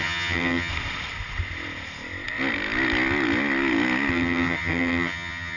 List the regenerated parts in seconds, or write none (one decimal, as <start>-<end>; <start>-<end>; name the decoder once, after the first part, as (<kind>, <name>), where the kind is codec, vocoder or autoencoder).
0.0-0.7 (vocoder, HiFi-GAN); 4.1-5.6